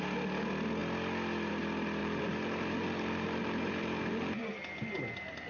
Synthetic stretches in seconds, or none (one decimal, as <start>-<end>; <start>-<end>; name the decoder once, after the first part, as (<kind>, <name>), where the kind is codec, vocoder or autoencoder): 2.0-4.4 (vocoder, BigVGAN v2)